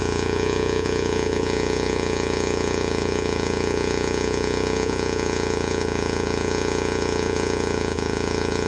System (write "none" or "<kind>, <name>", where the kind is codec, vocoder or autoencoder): vocoder, Vocos